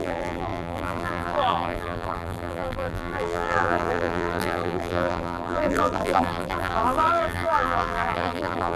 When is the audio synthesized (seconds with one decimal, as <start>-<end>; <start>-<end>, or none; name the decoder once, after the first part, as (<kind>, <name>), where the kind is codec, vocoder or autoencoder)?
0.0-8.8 (vocoder, BigVGAN v2)

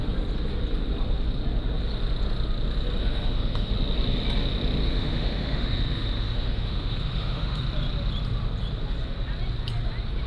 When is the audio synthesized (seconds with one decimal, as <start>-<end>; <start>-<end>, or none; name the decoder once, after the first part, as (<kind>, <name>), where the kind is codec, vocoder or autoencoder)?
3.0-3.7 (autoencoder, DAC-VAE); 4.8-7.6

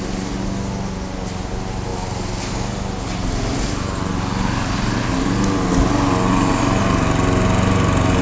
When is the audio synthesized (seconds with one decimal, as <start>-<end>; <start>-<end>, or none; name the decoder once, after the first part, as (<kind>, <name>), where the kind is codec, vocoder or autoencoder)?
none

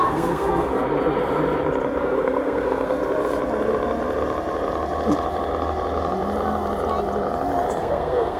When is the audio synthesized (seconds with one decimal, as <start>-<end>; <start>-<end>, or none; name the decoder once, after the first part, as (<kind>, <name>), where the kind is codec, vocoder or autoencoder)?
0.0-0.7 (codec, SNAC); 2.0-2.9; 7.8-8.4

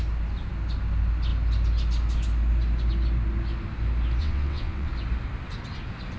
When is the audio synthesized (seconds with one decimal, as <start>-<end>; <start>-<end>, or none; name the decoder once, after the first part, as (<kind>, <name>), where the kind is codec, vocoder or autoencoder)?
4.2-4.9 (vocoder, WaveNeXt)

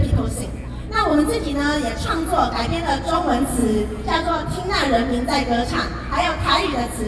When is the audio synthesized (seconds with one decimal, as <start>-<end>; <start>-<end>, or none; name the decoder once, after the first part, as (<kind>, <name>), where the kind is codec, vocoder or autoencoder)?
3.6-4.3 (vocoder, Vocos)

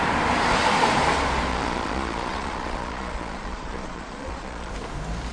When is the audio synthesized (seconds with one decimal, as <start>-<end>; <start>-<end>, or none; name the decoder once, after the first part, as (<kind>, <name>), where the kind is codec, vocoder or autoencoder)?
1.5-4.7 (vocoder, Vocos)

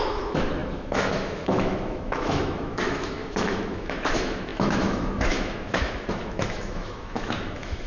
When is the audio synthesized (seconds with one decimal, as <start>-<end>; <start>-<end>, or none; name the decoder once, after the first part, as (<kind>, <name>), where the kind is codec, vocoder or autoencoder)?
0.0-7.9 (autoencoder, DAC-VAE)